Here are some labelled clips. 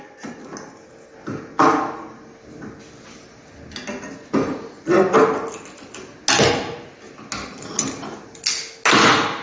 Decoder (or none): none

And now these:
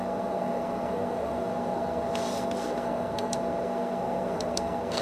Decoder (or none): codec, SNAC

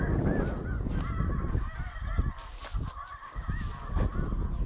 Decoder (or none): none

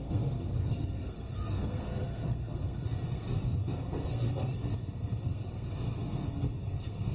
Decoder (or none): codec, SNAC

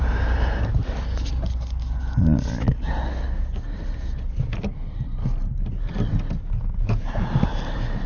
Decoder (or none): none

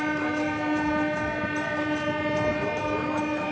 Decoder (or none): none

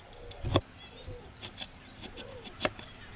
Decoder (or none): none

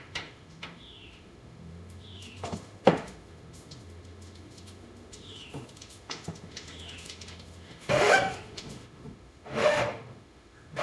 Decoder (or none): autoencoder, DAC-VAE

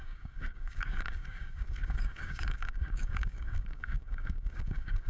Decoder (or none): codec, DAC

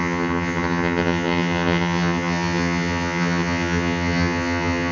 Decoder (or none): vocoder, HiFi-GAN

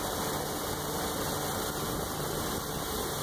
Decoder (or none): none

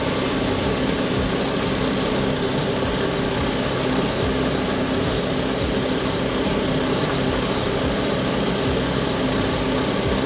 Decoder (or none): none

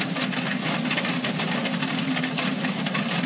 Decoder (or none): none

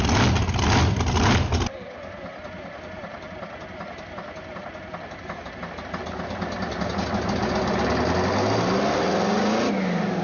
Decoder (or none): none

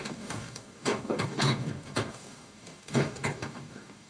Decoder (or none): codec, DAC